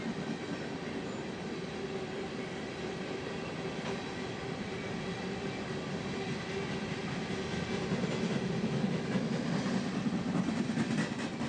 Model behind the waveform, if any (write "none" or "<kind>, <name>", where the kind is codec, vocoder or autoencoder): none